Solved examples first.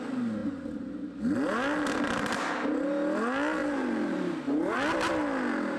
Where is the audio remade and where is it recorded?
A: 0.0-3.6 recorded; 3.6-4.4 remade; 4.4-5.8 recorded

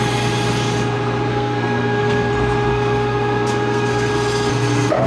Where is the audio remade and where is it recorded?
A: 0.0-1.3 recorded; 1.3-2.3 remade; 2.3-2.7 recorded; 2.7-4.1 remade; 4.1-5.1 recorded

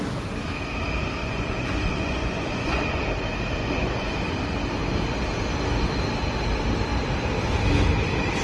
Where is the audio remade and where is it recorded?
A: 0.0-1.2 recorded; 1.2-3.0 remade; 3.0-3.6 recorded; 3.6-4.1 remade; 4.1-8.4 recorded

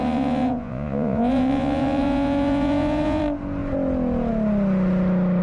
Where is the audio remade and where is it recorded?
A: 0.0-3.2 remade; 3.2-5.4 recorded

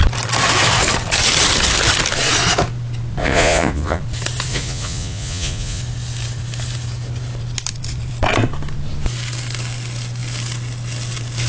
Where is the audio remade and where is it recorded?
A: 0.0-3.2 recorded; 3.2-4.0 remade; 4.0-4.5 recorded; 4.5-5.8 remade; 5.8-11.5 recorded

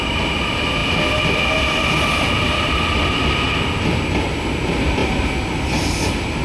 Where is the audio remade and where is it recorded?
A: 0.0-6.4 recorded

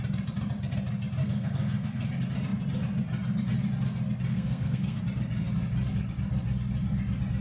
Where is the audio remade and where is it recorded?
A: 0.0-1.2 recorded; 1.2-2.1 remade; 2.1-4.3 recorded; 4.3-5.0 remade; 5.0-7.4 recorded